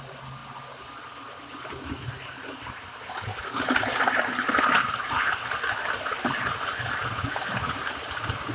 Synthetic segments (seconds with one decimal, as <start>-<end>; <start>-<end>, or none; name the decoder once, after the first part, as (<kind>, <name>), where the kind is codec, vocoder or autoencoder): none